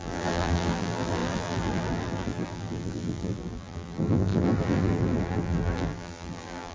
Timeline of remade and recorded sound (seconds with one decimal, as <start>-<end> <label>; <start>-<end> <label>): 0.0-6.7 remade